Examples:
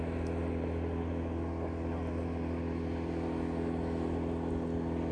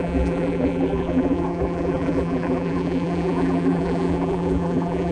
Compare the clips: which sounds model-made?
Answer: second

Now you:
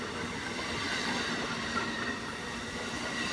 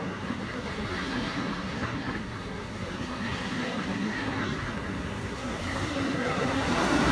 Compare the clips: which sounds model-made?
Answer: second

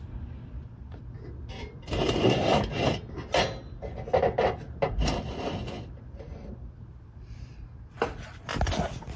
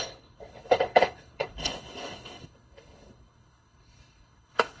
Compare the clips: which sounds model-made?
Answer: second